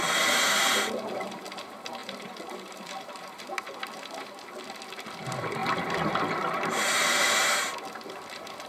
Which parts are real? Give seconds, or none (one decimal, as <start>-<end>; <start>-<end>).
0.0-2.0; 3.4-8.7